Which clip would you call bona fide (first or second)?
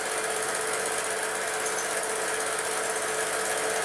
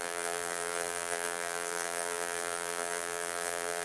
first